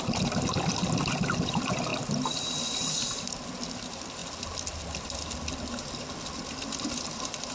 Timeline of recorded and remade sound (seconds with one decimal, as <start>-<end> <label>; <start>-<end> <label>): 0.0-7.5 recorded